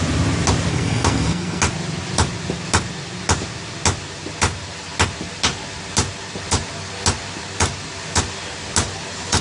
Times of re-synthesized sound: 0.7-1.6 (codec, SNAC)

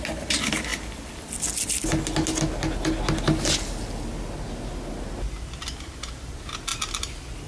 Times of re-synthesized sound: none

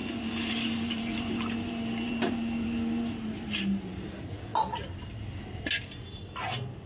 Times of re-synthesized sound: 0.0-4.1 (vocoder, BigVGAN v2)